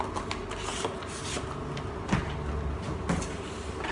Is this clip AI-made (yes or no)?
no